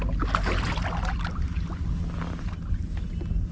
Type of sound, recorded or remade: recorded